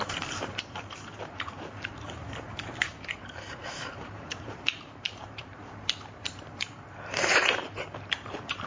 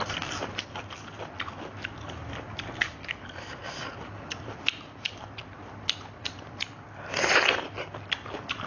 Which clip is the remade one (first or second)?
first